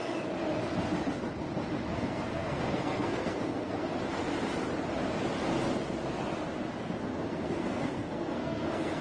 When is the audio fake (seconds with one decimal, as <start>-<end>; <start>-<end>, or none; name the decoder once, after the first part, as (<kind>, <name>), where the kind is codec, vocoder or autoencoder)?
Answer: 1.9-3.9 (codec, SNAC); 7.0-9.0